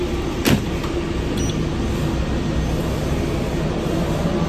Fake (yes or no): no